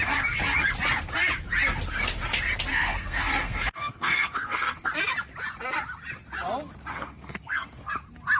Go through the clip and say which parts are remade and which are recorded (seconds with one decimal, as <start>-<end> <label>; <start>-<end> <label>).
0.0-2.7 recorded; 2.7-4.9 remade; 4.9-6.9 recorded; 6.9-7.9 remade; 7.9-8.4 recorded